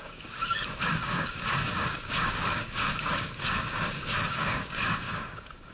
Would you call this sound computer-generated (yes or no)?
yes